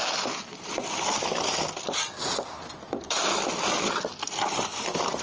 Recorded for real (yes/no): yes